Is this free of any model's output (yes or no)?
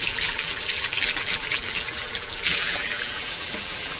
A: no